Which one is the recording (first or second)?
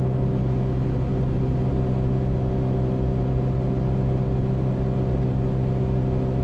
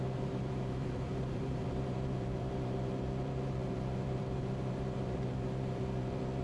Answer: first